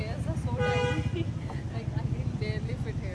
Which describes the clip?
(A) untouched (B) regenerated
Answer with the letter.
A